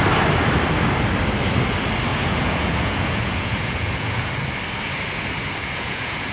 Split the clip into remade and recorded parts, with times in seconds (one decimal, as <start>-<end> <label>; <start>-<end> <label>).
0.0-2.1 recorded; 2.1-4.3 remade; 4.3-5.6 recorded; 5.6-6.3 remade